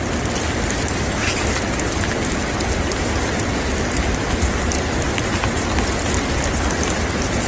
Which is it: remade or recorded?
recorded